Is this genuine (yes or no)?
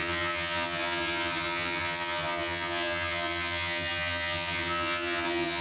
no